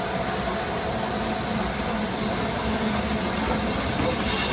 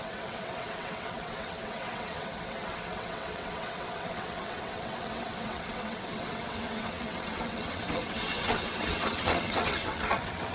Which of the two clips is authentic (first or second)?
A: first